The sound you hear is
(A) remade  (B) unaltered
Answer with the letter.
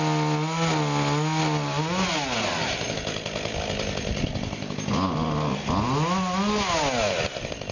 B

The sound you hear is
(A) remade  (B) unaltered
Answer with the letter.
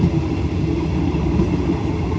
B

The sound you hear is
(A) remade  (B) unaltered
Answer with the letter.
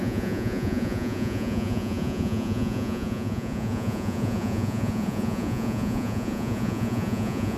A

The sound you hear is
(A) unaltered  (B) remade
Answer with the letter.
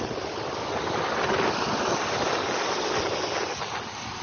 A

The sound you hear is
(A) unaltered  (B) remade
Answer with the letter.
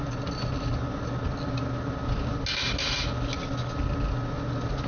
A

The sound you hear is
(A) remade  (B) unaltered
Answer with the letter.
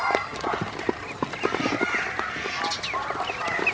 B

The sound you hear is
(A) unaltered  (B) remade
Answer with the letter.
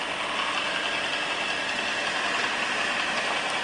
A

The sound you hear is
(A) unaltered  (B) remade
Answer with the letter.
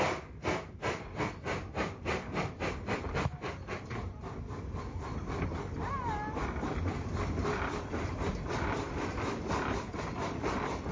A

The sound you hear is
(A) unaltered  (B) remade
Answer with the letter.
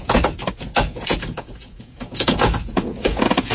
B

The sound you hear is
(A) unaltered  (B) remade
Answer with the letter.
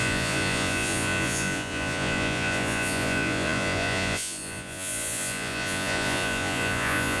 B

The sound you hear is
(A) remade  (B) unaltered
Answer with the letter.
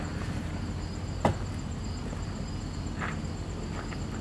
A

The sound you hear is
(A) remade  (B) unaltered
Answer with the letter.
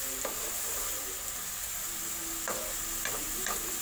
B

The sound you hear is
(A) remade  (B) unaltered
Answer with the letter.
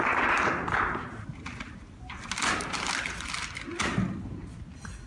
B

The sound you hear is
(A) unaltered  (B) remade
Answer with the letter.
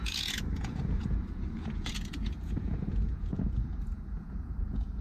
B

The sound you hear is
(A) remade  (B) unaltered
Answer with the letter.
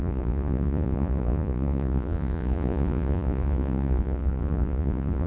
A